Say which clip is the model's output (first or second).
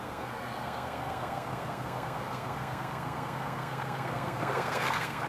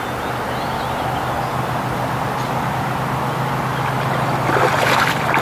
first